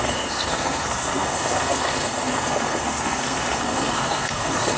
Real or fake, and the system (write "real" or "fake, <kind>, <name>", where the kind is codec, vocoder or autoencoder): fake, codec, SNAC